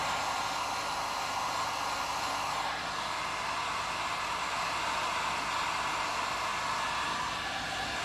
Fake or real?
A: real